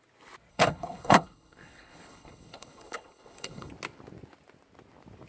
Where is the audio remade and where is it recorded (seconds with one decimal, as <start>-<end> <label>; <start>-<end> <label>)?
0.0-0.5 recorded; 0.5-3.7 remade; 3.7-5.3 recorded